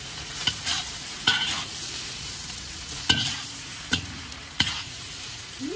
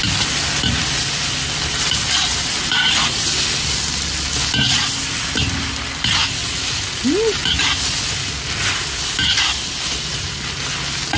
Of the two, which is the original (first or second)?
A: second